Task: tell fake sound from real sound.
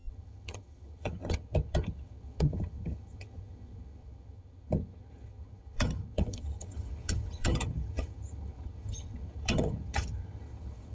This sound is fake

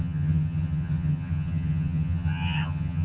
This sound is fake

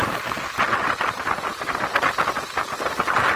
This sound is real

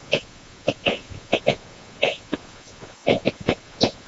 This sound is fake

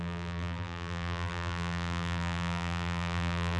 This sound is fake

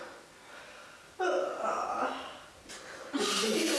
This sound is real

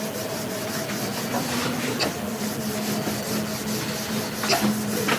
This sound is real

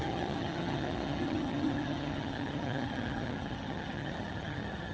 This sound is fake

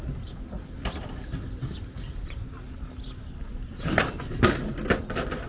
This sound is real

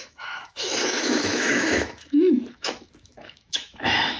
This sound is fake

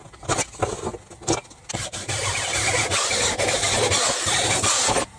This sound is real